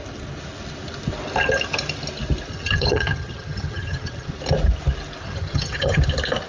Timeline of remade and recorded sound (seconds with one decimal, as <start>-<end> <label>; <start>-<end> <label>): 0.0-2.5 recorded; 2.5-4.3 remade; 4.3-5.2 recorded; 5.2-6.0 remade; 6.0-6.5 recorded